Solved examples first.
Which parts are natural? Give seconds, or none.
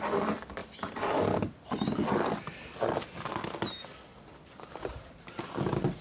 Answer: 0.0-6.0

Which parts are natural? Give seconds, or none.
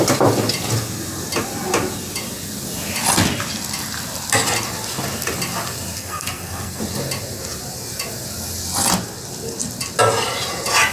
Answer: 0.0-6.0; 6.8-10.9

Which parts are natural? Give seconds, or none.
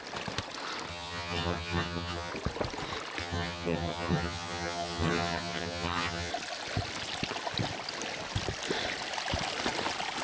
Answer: 0.0-0.9; 2.3-3.2; 6.3-10.2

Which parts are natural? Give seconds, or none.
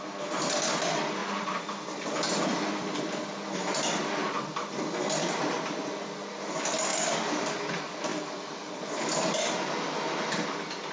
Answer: 0.0-1.2; 3.2-6.9; 7.7-8.1; 8.7-10.9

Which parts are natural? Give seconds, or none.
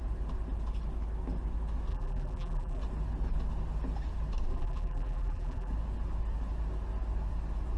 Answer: 0.0-1.9; 2.8-4.5; 5.7-7.8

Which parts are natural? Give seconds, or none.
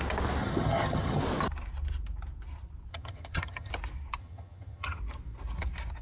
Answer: 0.0-0.4; 1.2-2.9; 3.7-4.2; 5.0-6.0